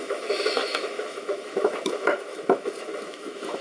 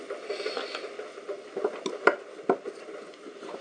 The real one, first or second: second